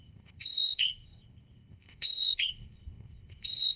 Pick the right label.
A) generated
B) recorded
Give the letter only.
A